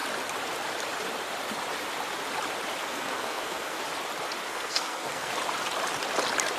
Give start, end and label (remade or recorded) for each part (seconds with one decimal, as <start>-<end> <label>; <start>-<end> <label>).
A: 0.0-2.8 recorded; 2.8-3.8 remade; 3.8-4.5 recorded; 4.5-5.3 remade; 5.3-6.6 recorded